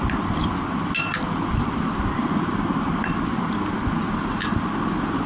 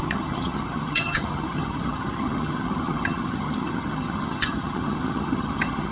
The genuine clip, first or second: first